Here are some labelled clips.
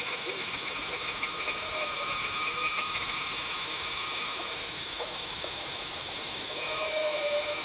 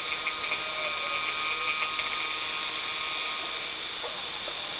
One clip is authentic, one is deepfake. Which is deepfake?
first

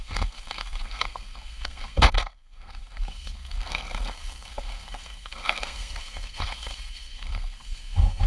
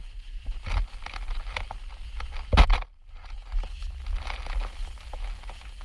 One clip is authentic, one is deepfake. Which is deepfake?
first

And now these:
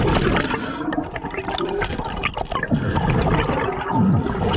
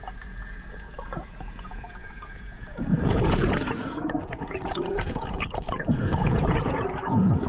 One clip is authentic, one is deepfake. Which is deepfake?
second